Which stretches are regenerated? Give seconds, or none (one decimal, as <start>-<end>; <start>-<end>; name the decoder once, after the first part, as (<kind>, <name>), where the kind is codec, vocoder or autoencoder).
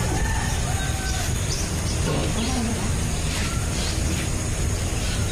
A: 0.0-5.3 (vocoder, BigVGAN v2)